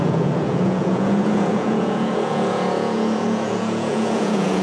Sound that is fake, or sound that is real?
fake